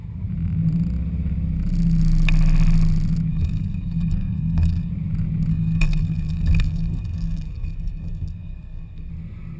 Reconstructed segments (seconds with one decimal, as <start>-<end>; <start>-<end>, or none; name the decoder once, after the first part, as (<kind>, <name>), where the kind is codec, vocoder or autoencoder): 3.3-4.9 (codec, SNAC); 5.5-9.1